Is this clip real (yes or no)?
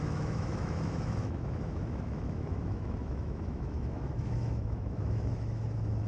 no